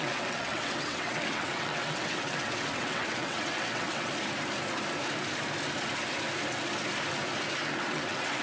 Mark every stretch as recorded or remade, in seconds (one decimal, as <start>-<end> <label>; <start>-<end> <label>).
0.0-4.1 remade; 4.1-7.9 recorded; 7.9-8.4 remade